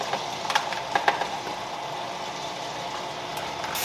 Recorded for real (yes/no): yes